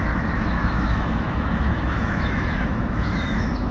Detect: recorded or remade remade